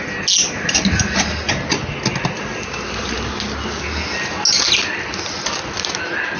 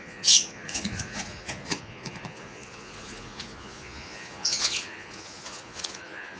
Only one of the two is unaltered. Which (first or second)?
first